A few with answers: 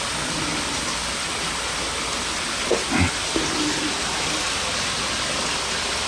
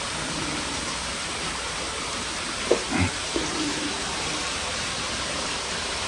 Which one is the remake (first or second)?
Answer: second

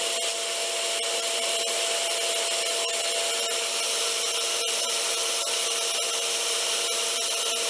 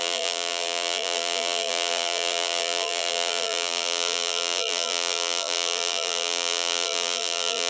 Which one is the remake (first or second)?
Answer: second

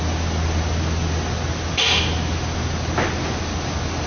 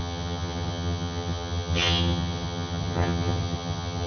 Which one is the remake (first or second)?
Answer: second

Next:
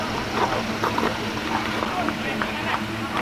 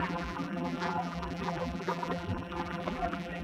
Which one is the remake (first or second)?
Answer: second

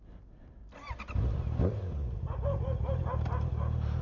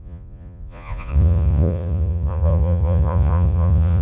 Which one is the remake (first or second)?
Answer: second